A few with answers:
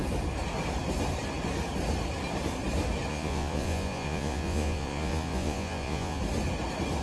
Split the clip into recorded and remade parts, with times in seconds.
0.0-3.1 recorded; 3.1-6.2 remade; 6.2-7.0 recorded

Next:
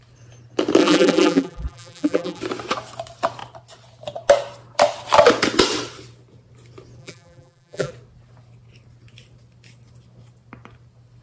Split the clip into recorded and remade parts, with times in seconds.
0.0-0.8 recorded; 0.8-2.4 remade; 2.4-7.0 recorded; 7.0-7.9 remade; 7.9-11.2 recorded